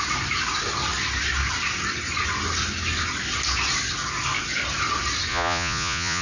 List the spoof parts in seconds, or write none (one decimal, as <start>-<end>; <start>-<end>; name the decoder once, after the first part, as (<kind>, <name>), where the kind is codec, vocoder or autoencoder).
5.3-6.2 (vocoder, Vocos)